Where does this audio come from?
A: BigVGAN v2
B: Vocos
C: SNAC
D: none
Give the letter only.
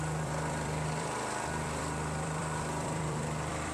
A